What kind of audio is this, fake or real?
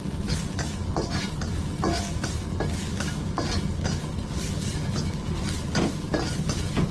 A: real